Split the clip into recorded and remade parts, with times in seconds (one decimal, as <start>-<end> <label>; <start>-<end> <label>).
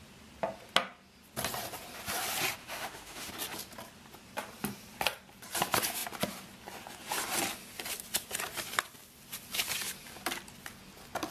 0.0-2.6 recorded; 2.6-3.3 remade; 3.3-11.3 recorded